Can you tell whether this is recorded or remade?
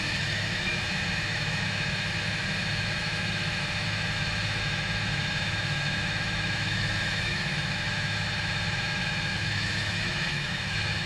remade